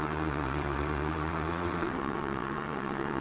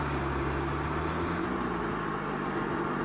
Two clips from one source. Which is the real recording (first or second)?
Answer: second